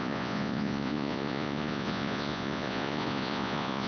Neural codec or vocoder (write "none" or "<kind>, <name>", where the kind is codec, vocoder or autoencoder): vocoder, Vocos